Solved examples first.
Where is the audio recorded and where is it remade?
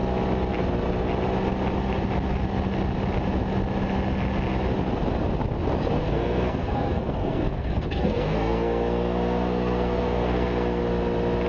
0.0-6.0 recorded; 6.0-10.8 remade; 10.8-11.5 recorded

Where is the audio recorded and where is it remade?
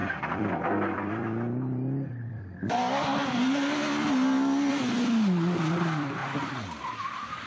0.0-2.8 remade; 2.8-4.7 recorded; 4.7-6.2 remade; 6.2-6.9 recorded; 6.9-7.5 remade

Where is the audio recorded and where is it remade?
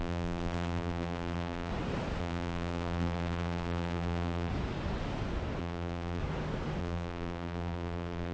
0.0-1.7 remade; 1.7-2.2 recorded; 2.2-4.5 remade; 4.5-5.6 recorded; 5.6-6.2 remade; 6.2-6.8 recorded; 6.8-8.3 remade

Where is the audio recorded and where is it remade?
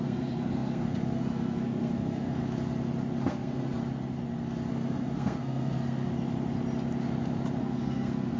0.0-2.4 remade; 2.4-3.2 recorded; 3.2-3.8 remade; 3.8-4.7 recorded; 4.7-6.1 remade; 6.1-7.6 recorded; 7.6-8.4 remade